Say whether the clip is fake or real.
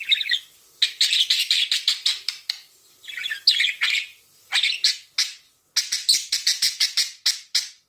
real